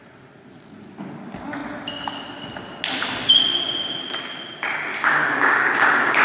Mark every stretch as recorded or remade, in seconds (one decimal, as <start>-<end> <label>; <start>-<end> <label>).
0.0-4.9 recorded; 4.9-6.2 remade